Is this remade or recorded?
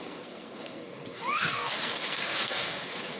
remade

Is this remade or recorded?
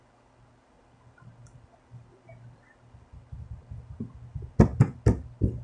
recorded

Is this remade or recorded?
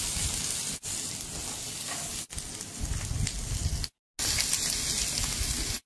recorded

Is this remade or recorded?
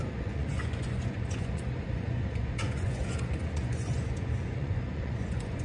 remade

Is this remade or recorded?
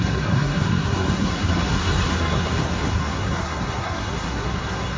remade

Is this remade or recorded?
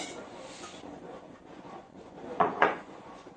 remade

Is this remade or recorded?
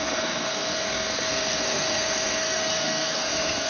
remade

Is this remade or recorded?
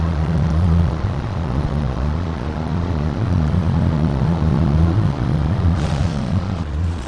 remade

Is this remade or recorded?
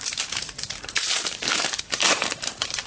remade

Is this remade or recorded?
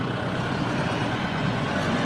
remade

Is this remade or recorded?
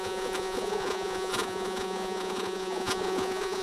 remade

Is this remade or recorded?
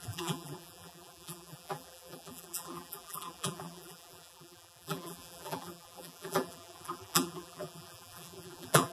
remade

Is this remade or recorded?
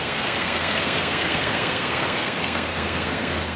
remade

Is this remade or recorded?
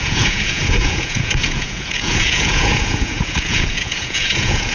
remade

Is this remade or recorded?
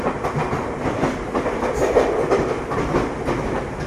recorded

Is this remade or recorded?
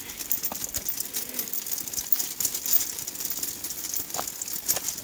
recorded